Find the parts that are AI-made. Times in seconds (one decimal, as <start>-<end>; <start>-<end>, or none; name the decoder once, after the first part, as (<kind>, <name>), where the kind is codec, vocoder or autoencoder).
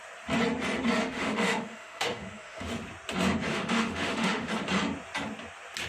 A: 1.0-2.7 (autoencoder, DAC-VAE); 3.5-4.5